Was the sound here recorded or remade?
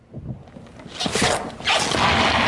recorded